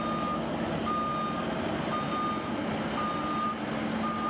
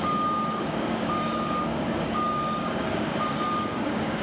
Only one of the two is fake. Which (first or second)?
second